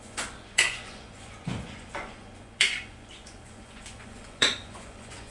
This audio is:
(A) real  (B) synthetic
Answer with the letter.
B